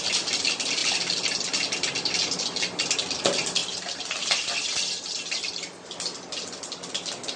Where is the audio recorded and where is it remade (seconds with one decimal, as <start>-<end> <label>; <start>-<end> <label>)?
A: 0.0-7.4 recorded